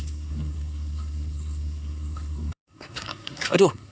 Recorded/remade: remade